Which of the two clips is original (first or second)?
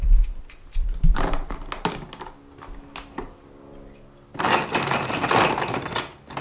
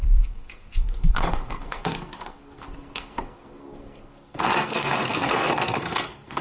first